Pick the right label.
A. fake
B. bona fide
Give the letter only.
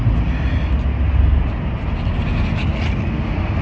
B